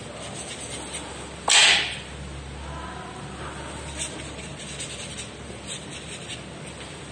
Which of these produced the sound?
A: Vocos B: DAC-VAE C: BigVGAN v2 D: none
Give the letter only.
D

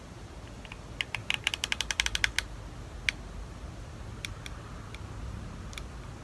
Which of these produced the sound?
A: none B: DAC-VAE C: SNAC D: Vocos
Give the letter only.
A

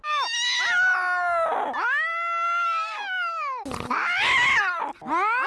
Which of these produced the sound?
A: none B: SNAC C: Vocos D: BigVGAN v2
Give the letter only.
A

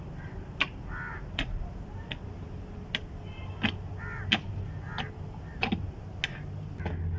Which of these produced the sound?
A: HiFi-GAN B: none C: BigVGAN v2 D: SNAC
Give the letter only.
B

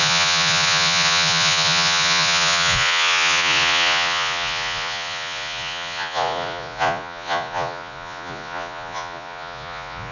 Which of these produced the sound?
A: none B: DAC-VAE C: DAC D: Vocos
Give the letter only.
D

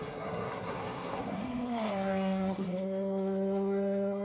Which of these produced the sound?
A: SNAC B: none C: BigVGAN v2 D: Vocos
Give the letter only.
A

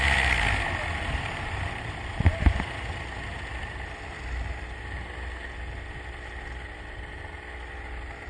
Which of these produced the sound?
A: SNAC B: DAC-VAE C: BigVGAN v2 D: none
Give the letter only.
D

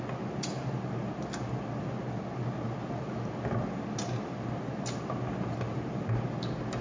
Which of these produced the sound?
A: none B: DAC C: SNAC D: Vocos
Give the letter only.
A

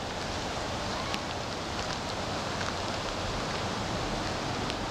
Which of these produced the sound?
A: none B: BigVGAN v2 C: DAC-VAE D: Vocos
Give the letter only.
A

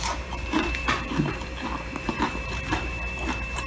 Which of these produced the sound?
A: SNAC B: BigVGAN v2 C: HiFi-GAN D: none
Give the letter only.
B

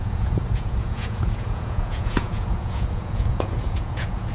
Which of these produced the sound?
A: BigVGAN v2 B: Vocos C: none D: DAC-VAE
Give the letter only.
B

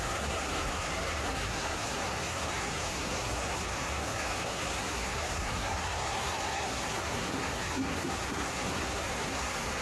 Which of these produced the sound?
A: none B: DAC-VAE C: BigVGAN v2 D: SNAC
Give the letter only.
D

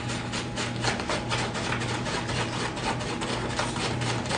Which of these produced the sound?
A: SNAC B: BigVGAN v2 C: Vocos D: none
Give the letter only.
D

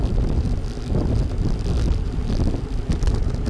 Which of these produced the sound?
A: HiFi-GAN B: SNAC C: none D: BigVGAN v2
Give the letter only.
C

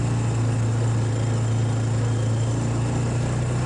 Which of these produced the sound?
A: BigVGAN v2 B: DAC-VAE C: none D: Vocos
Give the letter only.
C